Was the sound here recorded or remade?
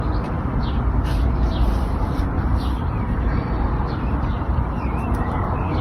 remade